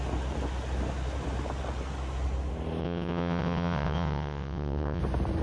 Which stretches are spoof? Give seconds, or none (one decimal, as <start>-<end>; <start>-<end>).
2.8-5.0